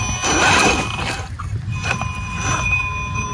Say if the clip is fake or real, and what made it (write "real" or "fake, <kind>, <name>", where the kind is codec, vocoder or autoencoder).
real